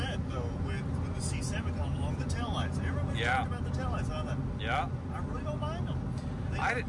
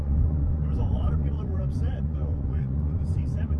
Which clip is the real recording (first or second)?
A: first